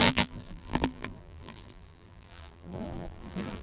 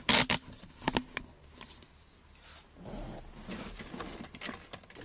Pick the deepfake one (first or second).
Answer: first